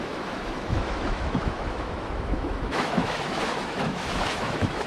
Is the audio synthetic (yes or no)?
yes